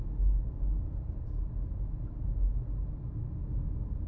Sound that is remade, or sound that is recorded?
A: recorded